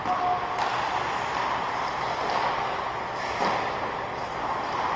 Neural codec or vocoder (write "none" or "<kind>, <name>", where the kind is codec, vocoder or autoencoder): none